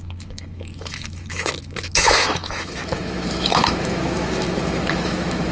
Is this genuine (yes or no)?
no